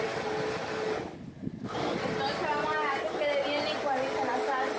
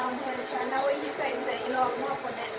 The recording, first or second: first